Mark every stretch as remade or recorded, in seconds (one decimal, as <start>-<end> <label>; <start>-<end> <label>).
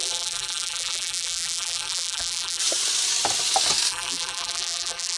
0.0-2.6 remade; 2.6-3.9 recorded; 3.9-5.2 remade